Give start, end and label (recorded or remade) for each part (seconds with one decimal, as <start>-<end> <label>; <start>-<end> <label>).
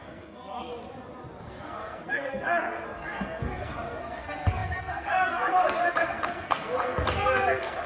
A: 0.0-0.7 remade; 0.7-1.4 recorded; 1.4-7.9 remade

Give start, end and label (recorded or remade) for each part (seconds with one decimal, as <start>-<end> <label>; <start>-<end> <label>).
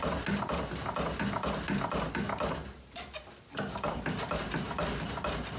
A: 0.0-5.6 recorded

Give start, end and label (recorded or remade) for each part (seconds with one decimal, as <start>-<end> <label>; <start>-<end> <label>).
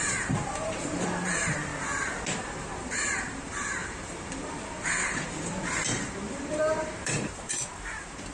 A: 0.0-1.7 remade; 1.7-2.3 recorded; 2.3-8.3 remade